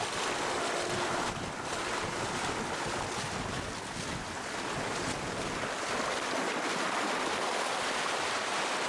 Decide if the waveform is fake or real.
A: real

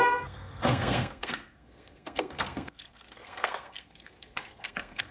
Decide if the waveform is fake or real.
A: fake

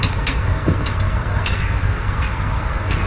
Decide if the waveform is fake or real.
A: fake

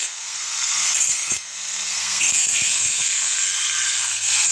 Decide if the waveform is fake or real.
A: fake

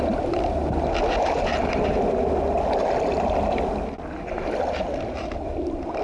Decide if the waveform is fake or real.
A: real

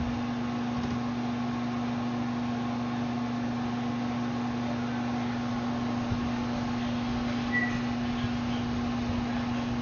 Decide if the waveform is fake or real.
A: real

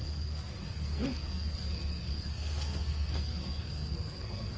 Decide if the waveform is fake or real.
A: fake